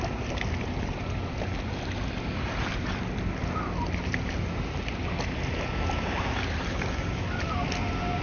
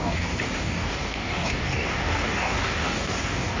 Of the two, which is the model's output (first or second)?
second